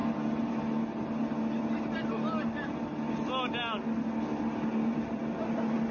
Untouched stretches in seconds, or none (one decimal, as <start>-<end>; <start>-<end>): 0.0-5.9